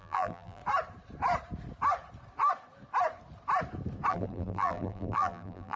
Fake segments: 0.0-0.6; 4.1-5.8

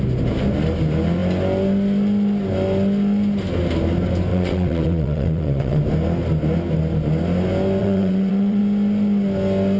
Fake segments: 4.3-5.8; 7.8-8.6

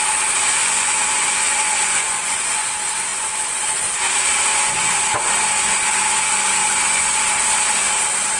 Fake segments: 0.6-2.7; 3.1-3.8; 4.5-6.0; 6.6-7.2

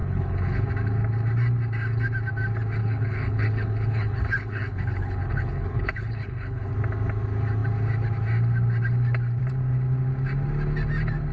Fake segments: 0.0-0.7; 2.8-6.7

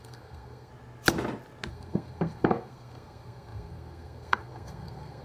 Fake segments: 0.0-0.7; 1.7-5.2

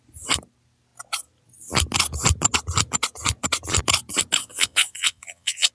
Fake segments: 4.4-5.7

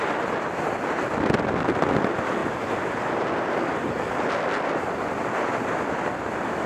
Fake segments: none